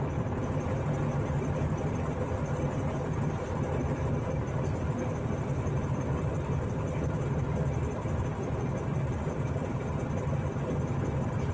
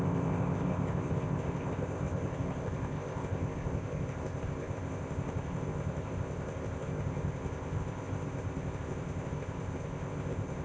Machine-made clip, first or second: second